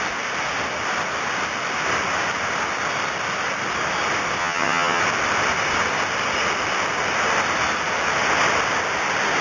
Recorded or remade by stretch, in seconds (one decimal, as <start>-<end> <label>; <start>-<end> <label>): 0.0-4.4 recorded; 4.4-5.0 remade; 5.0-9.4 recorded